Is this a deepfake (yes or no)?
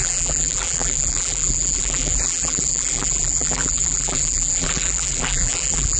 yes